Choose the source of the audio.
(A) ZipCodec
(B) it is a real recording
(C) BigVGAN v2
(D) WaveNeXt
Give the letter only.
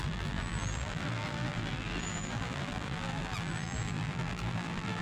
C